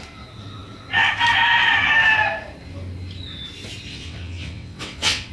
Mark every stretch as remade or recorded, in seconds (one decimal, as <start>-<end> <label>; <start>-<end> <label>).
0.0-3.9 recorded; 3.9-5.3 remade